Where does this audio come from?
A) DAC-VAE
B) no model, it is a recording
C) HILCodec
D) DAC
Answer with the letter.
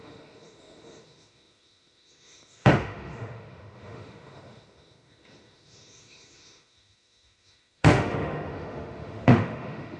A